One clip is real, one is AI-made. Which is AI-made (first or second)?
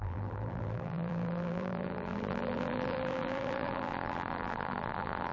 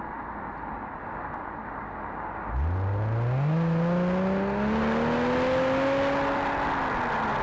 first